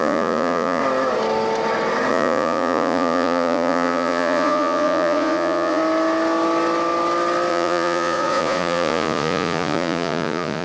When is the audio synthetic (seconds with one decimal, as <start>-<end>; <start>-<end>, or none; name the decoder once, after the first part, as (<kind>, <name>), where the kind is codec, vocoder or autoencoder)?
0.0-0.8 (vocoder, Vocos); 2.1-5.8; 7.5-10.6